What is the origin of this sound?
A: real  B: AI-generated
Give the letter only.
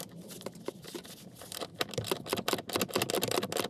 A